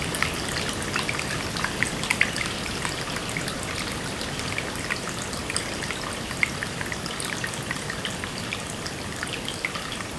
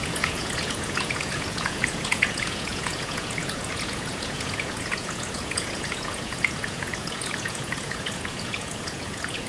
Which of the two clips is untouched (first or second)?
first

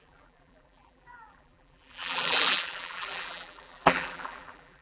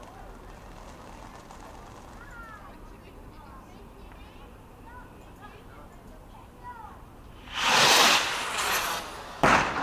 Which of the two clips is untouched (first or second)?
second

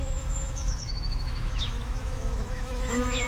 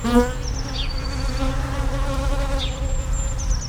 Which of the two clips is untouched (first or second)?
second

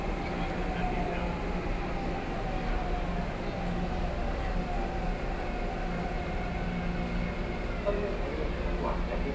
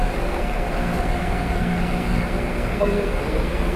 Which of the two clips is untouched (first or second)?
first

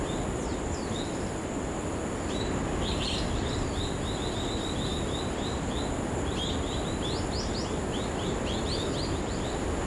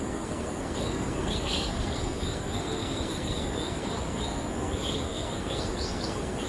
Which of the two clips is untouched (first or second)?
first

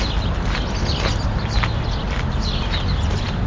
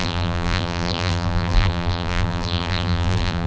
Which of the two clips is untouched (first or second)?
first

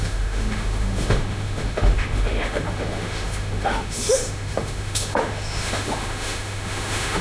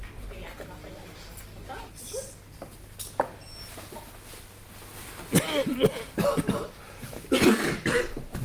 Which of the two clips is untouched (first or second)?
second